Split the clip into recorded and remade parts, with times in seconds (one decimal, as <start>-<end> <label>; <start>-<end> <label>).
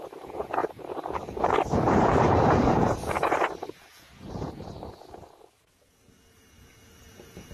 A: 0.0-7.5 remade